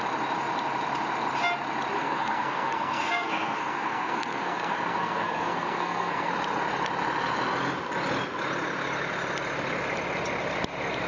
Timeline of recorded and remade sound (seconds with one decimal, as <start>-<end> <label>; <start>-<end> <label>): 0.0-2.0 recorded; 2.0-6.3 remade; 6.3-11.1 recorded